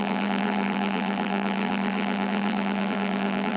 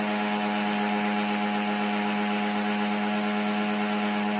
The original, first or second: second